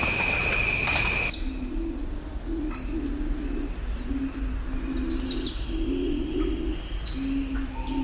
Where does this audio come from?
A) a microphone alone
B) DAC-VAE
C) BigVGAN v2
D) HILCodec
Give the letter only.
A